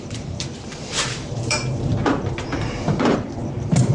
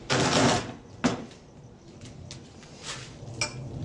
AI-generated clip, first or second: first